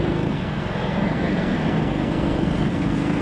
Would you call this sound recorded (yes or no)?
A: no